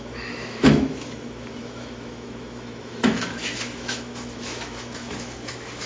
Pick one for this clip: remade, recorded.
remade